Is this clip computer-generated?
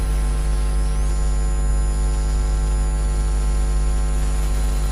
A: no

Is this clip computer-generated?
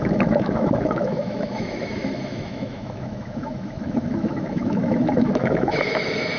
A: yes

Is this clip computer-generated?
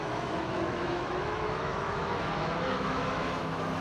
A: yes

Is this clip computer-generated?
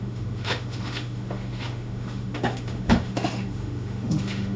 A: yes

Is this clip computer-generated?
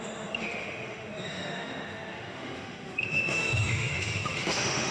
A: yes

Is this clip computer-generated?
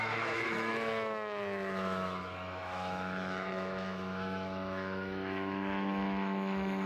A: yes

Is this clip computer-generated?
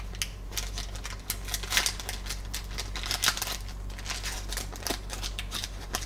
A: no